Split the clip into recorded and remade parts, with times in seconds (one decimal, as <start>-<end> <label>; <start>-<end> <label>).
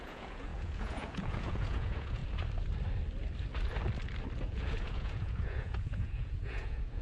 0.0-2.2 remade; 2.2-4.4 recorded; 4.4-7.0 remade